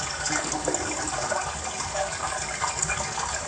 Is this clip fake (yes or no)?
yes